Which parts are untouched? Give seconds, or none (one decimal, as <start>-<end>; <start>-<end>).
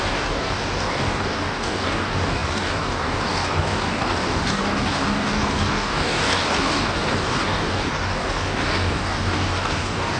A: none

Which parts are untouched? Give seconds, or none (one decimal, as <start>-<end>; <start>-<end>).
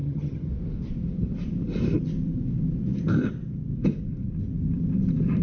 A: 0.5-5.4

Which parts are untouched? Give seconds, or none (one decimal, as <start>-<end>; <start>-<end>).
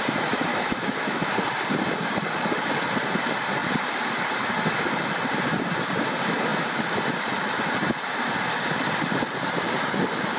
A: 0.0-0.5; 1.3-10.4